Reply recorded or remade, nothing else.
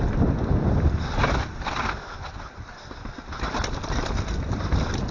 remade